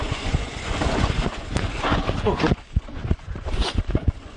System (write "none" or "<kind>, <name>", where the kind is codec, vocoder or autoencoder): vocoder, Vocos